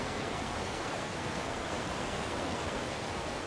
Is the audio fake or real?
fake